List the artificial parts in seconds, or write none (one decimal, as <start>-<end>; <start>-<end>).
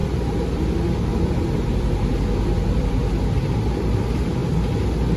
0.0-1.1; 2.8-4.4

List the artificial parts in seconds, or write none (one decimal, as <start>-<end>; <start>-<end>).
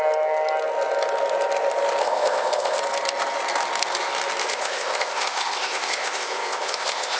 2.0-2.8; 4.4-7.2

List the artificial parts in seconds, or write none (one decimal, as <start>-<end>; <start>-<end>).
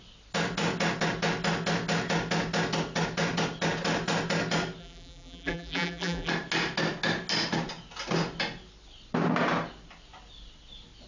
4.8-6.3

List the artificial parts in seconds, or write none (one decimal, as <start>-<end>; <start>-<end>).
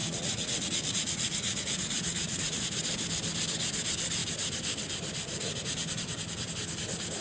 0.0-2.6